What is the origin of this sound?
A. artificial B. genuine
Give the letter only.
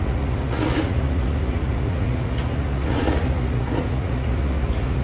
A